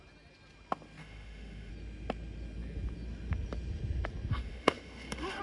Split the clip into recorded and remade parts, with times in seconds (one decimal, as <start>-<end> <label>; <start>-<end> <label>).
0.0-1.0 recorded; 1.0-1.7 remade; 1.7-4.3 recorded; 4.3-5.4 remade